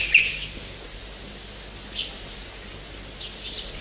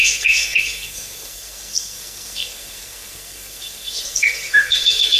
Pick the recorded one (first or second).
first